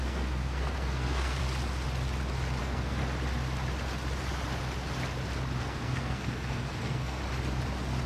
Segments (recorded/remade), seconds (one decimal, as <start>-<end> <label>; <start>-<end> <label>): 0.0-1.4 remade; 1.4-2.6 recorded; 2.6-3.0 remade; 3.0-5.6 recorded; 5.6-7.2 remade; 7.2-8.1 recorded